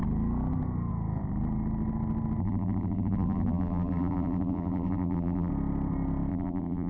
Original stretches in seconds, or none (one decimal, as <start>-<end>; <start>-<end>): 0.0-2.4; 5.5-6.3